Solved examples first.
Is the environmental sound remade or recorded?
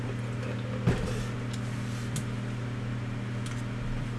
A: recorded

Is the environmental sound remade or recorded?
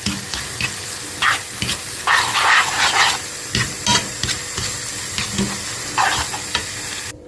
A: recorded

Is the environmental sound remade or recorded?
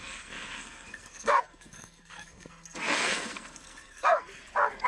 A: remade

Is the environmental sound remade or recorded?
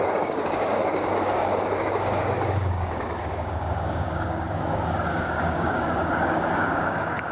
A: remade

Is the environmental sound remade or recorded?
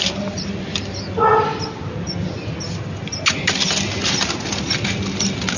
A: recorded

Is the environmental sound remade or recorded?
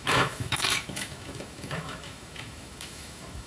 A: remade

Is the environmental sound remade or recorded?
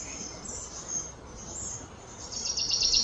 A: recorded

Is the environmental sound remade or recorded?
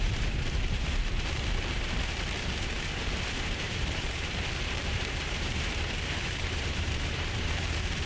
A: remade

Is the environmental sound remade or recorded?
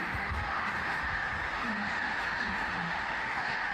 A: remade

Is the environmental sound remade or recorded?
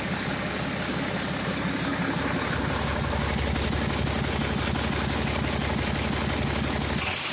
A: recorded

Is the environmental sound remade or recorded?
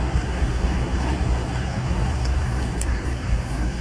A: remade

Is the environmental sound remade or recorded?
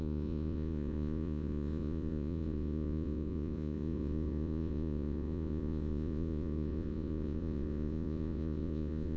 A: remade